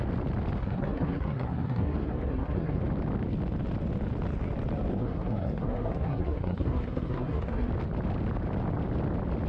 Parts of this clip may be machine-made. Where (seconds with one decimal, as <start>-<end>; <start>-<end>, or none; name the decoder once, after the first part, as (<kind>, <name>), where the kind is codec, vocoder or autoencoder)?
0.6-2.8 (codec, SNAC); 4.9-7.7